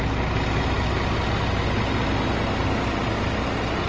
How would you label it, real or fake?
real